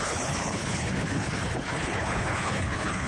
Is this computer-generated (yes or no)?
yes